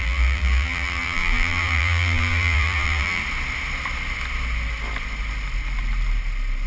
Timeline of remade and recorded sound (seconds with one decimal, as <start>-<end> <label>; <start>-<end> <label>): 0.0-3.2 remade; 3.2-6.7 recorded